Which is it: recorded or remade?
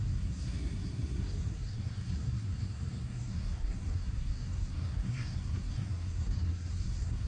remade